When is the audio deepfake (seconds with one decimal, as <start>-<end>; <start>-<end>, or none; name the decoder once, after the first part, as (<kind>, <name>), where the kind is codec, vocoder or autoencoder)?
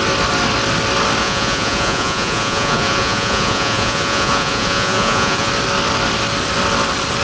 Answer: 1.2-5.5 (vocoder, Vocos)